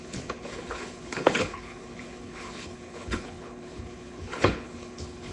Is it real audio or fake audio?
fake